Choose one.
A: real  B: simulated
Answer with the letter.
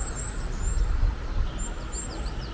A